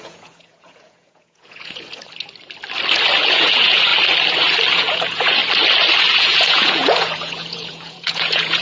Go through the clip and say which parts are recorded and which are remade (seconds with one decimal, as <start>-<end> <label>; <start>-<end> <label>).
0.0-2.0 remade; 2.0-3.2 recorded; 3.2-3.9 remade; 3.9-4.7 recorded; 4.7-5.4 remade; 5.4-6.0 recorded; 6.0-8.6 remade